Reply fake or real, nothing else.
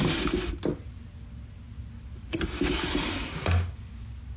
real